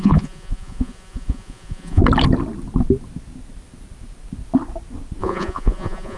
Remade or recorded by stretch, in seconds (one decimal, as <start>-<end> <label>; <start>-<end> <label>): 0.0-2.0 remade; 2.0-5.2 recorded; 5.2-6.2 remade

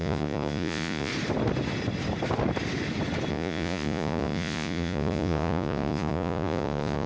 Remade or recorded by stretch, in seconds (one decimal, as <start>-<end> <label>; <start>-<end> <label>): 0.0-1.1 remade; 1.1-3.3 recorded; 3.3-7.1 remade

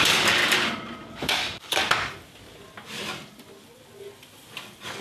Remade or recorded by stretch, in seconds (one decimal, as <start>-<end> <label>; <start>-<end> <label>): 0.0-0.4 remade; 0.4-1.1 recorded; 1.1-1.8 remade; 1.8-5.0 recorded

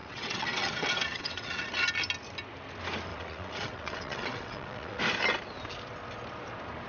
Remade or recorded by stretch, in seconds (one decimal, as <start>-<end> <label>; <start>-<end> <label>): 0.0-1.7 remade; 1.7-3.1 recorded; 3.1-5.0 remade; 5.0-6.9 recorded

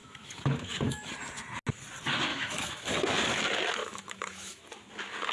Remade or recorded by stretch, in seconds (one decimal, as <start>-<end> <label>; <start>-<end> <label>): 0.0-1.1 remade; 1.1-2.3 recorded; 2.3-2.9 remade; 2.9-3.8 recorded; 3.8-4.6 remade; 4.6-5.3 recorded